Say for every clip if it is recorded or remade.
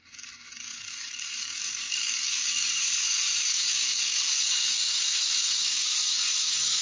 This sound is remade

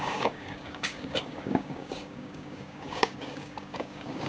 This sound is remade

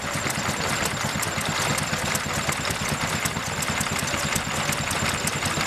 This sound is recorded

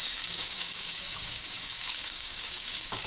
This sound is remade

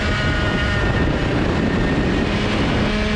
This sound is recorded